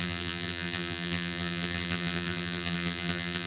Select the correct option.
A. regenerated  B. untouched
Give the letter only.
A